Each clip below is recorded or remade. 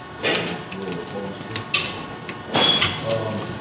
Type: recorded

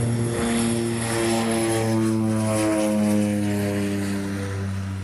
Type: recorded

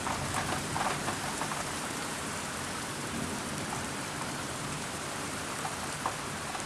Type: remade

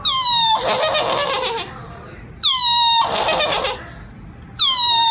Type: recorded